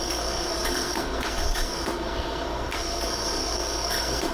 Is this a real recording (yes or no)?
no